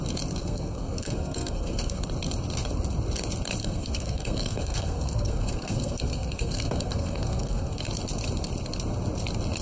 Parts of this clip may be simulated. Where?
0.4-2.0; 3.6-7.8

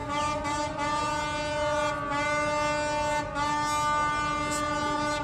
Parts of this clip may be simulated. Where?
none

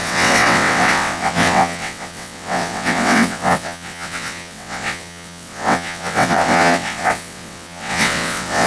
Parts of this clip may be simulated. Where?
0.0-8.7